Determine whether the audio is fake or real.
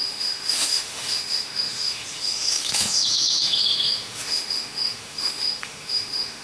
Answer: fake